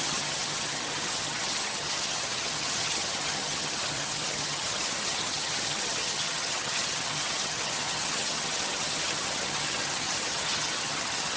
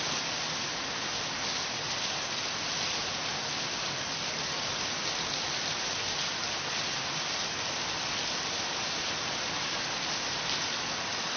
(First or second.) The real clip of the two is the second